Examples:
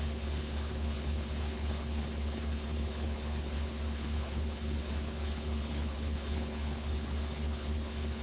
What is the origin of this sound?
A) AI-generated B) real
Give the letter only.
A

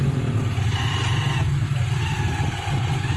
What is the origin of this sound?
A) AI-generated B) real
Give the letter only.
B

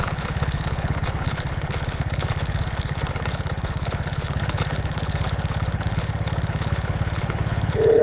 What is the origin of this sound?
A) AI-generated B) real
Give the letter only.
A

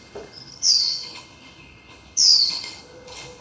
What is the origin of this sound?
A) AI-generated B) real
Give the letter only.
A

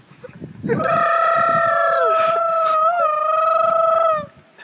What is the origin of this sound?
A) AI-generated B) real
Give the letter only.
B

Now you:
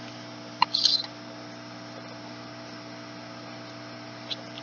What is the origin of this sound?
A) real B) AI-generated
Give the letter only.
A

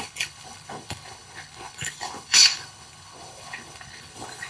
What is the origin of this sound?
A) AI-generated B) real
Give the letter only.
A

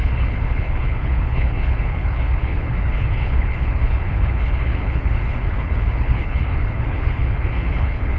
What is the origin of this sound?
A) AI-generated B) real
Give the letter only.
A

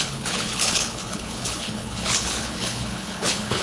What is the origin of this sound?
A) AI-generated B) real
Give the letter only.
A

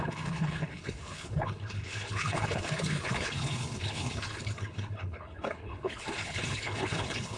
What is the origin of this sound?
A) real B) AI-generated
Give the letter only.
B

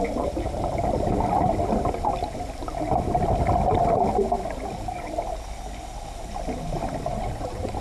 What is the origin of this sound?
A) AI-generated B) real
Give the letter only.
B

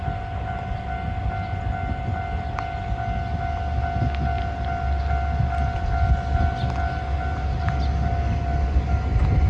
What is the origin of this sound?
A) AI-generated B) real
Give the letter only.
B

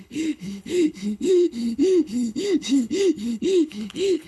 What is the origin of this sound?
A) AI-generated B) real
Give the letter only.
A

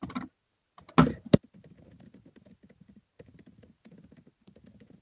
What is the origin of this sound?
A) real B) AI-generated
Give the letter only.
A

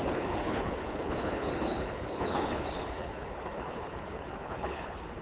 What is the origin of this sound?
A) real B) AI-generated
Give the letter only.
B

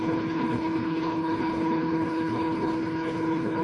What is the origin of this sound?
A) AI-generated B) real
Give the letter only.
A